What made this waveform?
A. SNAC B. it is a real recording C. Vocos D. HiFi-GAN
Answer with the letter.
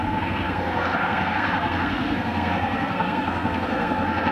A